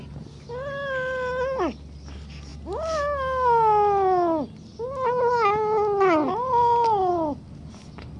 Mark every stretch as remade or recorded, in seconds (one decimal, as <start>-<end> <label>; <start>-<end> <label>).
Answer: 0.0-8.2 recorded